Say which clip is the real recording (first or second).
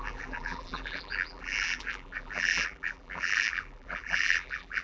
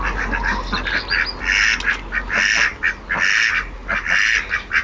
second